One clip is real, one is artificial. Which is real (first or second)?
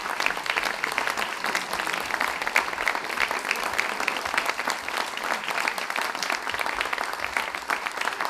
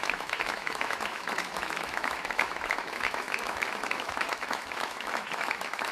first